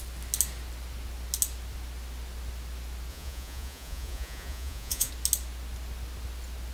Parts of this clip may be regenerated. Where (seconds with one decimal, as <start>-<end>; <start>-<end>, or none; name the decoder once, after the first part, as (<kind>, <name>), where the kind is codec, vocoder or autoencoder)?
3.1-5.1 (vocoder, Vocos)